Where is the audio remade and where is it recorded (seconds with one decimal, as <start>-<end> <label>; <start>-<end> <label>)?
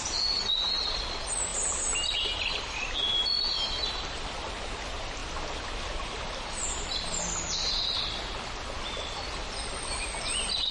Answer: 0.0-10.7 recorded